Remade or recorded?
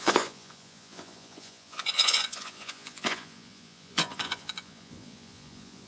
remade